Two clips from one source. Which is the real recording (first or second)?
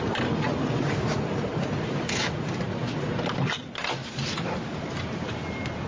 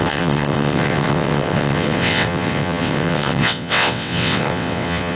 first